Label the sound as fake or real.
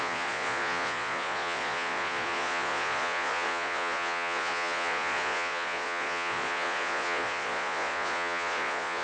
fake